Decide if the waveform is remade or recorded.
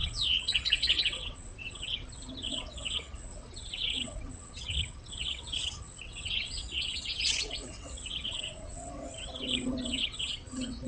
remade